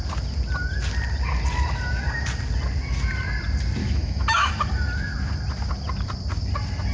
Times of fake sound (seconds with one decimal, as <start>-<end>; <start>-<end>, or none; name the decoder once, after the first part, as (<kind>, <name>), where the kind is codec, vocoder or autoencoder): 3.8-4.5 (autoencoder, DAC-VAE)

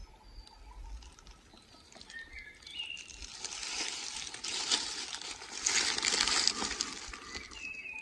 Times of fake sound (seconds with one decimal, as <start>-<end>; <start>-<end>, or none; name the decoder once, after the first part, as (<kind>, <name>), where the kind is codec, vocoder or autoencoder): none

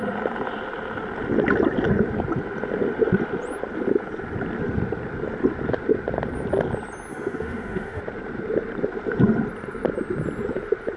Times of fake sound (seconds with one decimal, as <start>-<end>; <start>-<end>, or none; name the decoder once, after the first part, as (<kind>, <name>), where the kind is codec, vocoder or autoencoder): 7.1-8.0 (autoencoder, DAC-VAE)

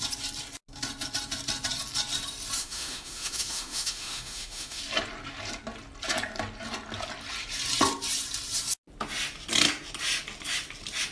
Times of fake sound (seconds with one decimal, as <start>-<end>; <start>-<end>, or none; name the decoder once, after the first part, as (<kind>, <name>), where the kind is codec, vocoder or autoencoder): 2.6-4.8 (autoencoder, DAC-VAE)

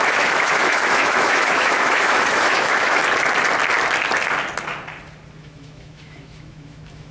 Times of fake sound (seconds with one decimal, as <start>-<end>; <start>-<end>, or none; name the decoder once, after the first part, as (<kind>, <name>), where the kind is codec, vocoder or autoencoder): 0.0-3.0 (autoencoder, DAC-VAE); 5.4-7.1

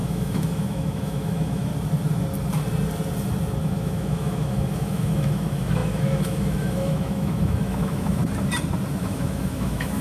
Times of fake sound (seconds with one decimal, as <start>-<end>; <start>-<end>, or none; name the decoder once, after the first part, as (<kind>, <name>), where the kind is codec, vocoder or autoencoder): 0.0-1.7 (autoencoder, DAC-VAE); 3.6-8.2; 8.9-10.0

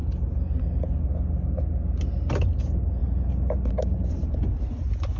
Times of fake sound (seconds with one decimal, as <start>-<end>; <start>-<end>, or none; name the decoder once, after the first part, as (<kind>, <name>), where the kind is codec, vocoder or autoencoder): none